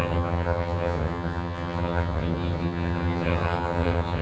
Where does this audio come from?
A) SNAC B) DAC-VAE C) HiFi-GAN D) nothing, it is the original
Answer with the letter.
C